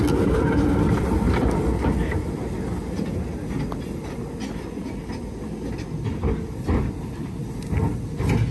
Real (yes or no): yes